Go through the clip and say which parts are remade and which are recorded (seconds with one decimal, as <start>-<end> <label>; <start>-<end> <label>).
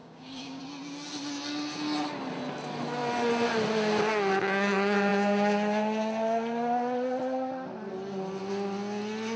0.0-0.6 remade; 0.6-9.4 recorded